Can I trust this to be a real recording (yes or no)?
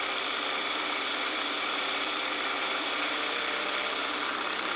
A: no